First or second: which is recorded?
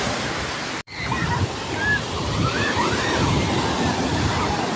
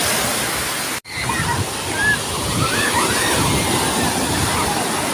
second